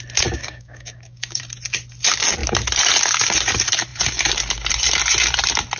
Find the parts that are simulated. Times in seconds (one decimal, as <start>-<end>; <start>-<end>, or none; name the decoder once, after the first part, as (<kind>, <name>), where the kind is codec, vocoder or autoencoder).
0.4-1.4 (codec, DAC)